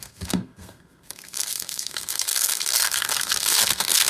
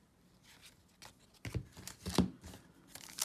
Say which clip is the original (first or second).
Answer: second